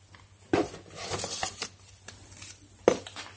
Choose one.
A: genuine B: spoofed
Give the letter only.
A